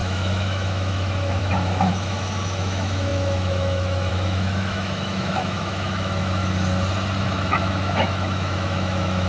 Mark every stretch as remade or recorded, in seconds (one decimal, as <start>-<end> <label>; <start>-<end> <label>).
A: 0.0-6.4 remade; 6.4-7.2 recorded; 7.2-9.3 remade